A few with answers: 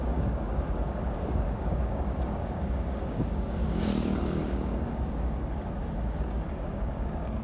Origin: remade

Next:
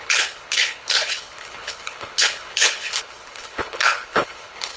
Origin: remade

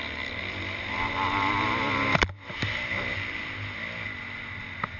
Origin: recorded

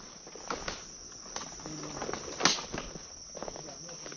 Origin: recorded